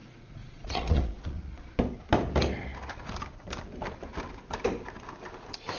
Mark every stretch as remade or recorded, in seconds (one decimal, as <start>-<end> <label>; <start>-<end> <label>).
0.0-1.7 remade; 1.7-5.8 recorded